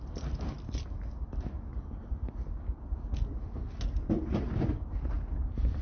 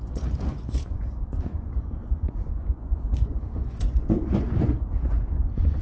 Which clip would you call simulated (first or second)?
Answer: second